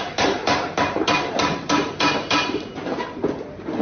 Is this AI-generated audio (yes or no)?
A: yes